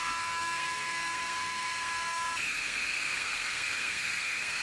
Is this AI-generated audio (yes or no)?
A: yes